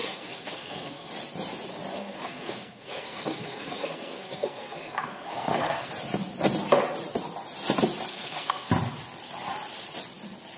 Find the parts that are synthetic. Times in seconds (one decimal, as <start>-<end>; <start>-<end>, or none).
0.0-1.1; 1.9-5.9; 8.1-8.7